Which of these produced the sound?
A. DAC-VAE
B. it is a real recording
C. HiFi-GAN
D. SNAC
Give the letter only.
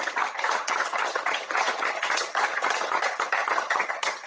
C